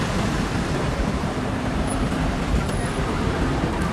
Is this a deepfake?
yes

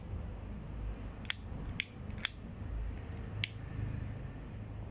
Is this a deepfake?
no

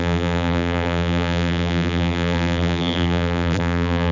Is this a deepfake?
yes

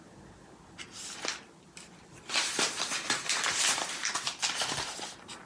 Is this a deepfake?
yes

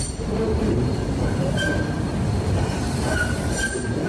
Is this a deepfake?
yes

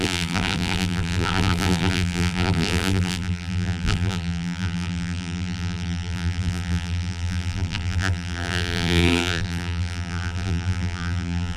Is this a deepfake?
yes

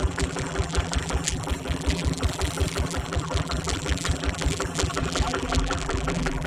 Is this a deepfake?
yes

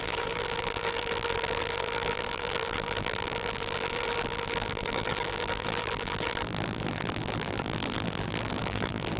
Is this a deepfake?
yes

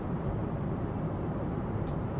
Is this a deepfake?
yes